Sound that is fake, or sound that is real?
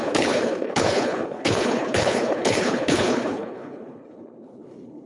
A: fake